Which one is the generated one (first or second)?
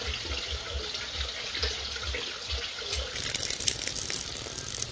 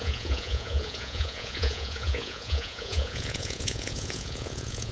second